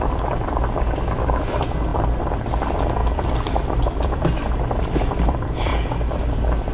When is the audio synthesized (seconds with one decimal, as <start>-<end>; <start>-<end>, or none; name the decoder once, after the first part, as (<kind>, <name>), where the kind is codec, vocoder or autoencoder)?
0.0-5.7 (vocoder, BigVGAN v2)